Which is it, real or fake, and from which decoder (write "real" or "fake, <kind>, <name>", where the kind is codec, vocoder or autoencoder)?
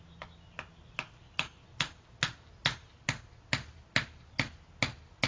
real